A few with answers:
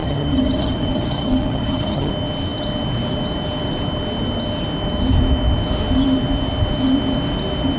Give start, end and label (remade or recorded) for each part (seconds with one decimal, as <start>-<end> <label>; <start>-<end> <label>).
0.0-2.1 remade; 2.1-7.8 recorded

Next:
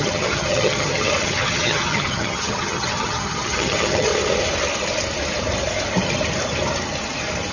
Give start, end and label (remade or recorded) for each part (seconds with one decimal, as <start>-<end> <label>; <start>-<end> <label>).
0.0-4.1 remade; 4.1-7.5 recorded

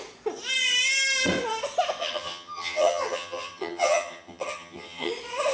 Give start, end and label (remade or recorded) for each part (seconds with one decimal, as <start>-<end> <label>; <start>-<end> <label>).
0.0-2.0 recorded; 2.0-5.1 remade; 5.1-5.5 recorded

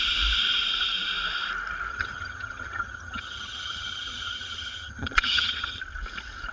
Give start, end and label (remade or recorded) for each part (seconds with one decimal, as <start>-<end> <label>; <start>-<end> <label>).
0.0-1.9 recorded; 1.9-5.8 remade; 5.8-6.5 recorded

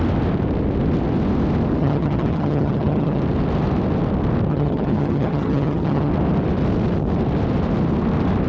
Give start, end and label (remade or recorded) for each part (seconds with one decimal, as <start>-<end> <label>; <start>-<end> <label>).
0.0-1.8 recorded; 1.8-3.2 remade; 3.2-4.5 recorded; 4.5-6.1 remade; 6.1-8.5 recorded